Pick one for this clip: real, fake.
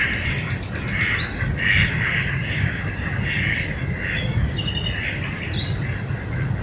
real